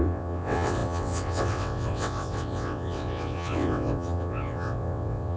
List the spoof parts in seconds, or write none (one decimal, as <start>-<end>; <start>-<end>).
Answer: 0.0-5.4